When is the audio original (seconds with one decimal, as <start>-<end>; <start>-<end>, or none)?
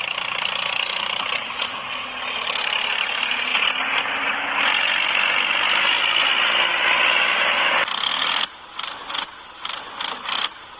0.0-10.8